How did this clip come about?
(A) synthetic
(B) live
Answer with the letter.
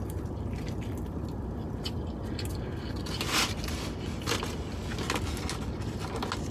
B